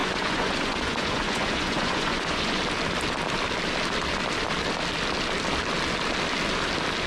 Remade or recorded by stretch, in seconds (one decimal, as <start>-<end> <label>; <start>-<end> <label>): 0.0-2.6 remade; 2.6-7.1 recorded